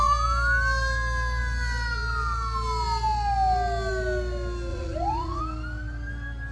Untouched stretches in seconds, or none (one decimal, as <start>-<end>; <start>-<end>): 0.0-4.7; 5.4-6.5